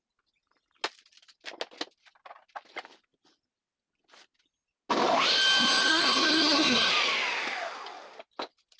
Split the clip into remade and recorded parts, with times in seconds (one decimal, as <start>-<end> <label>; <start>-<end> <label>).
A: 0.0-5.8 recorded; 5.8-6.9 remade; 6.9-8.8 recorded